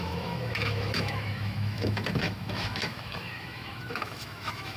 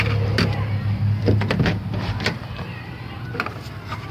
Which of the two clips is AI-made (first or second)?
first